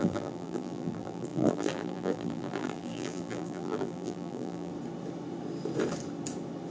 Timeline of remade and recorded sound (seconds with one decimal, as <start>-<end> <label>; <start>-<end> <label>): 0.0-4.7 remade; 4.7-6.7 recorded